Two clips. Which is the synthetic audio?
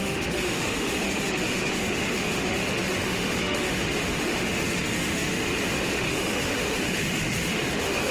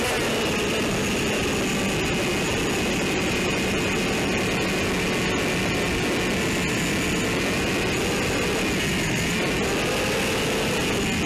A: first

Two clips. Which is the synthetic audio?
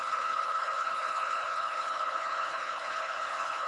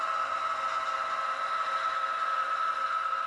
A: first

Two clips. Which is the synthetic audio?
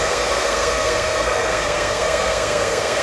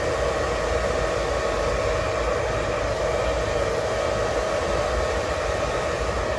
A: first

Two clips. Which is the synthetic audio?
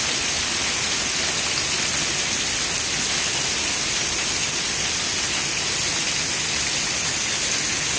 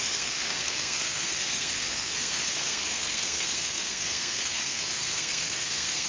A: second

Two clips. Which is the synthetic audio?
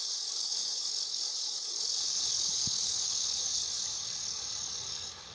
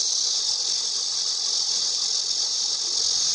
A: first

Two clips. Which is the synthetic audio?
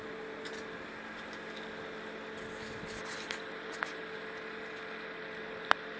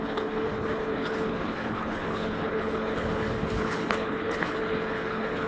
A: second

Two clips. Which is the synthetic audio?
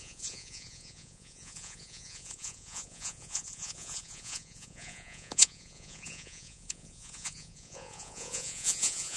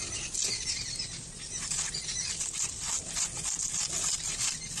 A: first